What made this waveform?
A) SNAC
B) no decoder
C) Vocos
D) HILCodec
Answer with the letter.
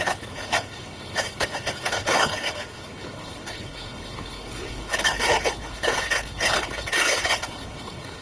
D